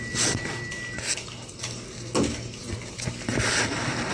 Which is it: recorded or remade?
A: recorded